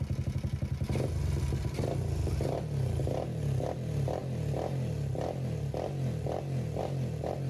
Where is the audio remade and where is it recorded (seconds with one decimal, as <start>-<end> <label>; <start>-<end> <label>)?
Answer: 0.0-7.5 recorded